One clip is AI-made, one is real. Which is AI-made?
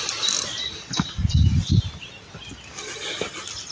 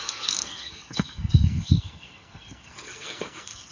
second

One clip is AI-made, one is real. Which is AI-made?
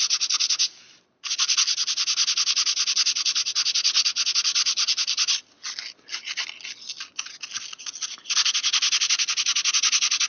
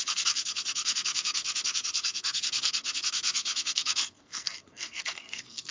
second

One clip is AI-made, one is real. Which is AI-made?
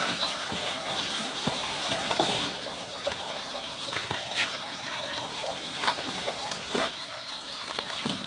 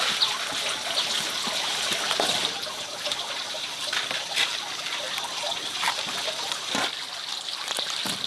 first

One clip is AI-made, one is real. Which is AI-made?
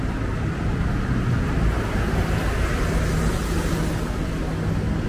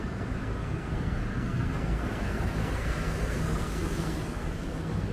second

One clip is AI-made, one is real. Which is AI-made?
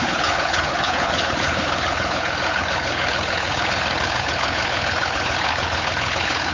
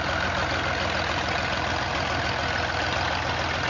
first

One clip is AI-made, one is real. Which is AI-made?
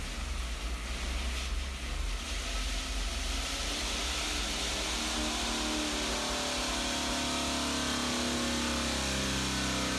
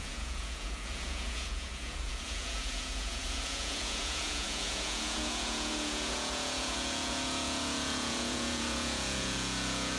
second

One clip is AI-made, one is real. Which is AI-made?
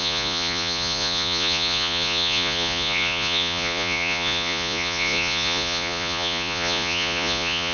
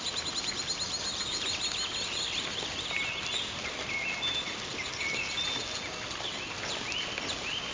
first